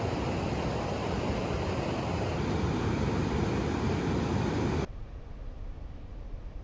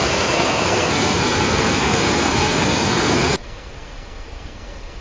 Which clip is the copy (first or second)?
second